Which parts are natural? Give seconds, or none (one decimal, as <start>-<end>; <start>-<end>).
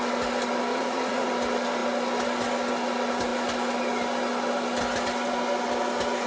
0.0-0.7; 1.3-6.3